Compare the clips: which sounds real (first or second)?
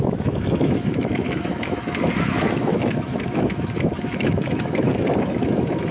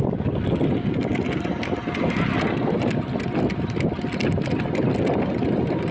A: second